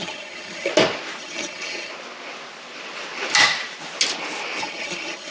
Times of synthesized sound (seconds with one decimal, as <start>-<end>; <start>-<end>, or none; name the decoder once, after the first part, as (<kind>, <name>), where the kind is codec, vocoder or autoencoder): 0.0-0.7 (vocoder, HiFi-GAN); 1.2-1.9; 4.6-5.3